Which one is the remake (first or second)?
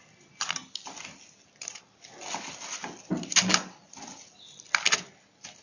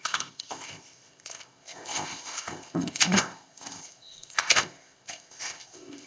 second